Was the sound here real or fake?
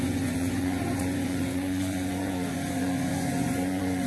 fake